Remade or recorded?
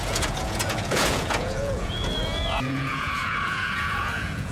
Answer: remade